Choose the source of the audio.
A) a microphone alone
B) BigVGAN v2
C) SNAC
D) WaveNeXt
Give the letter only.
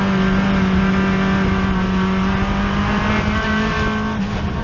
A